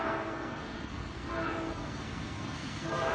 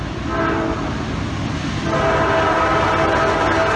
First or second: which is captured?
second